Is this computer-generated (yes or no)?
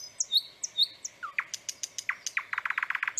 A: no